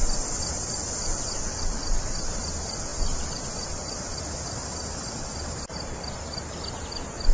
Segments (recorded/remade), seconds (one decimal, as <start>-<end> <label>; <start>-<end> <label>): 0.0-7.3 recorded

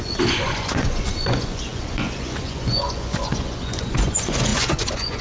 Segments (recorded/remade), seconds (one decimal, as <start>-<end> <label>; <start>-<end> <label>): 0.0-5.2 remade